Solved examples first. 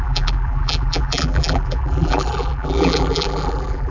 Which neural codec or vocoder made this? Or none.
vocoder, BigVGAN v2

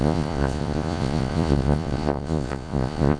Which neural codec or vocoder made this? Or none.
vocoder, Vocos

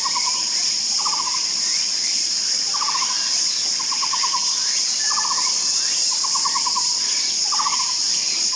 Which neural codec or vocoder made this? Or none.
vocoder, BigVGAN v2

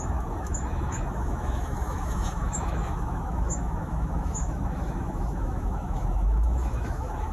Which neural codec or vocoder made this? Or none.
autoencoder, DAC-VAE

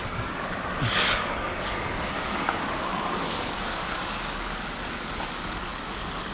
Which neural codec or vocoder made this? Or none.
codec, DAC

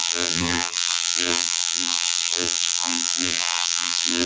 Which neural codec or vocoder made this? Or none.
vocoder, BigVGAN v2